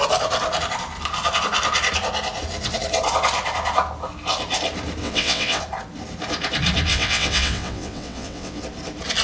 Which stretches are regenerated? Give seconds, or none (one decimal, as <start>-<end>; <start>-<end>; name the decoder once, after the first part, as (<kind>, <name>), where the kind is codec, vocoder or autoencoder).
5.0-5.6 (vocoder, WaveNeXt); 6.9-8.6

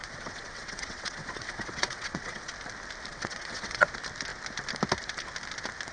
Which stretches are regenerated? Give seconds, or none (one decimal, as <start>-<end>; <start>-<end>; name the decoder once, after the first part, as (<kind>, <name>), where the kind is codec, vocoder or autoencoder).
0.0-2.5 (vocoder, WaveNeXt); 3.1-3.9